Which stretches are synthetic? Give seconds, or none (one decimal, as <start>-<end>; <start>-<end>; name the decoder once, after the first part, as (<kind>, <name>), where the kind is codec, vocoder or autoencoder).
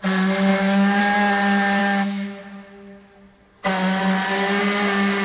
0.5-1.0 (autoencoder, DAC-VAE); 1.8-2.4